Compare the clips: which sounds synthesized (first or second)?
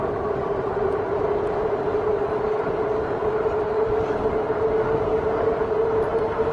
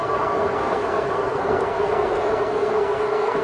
second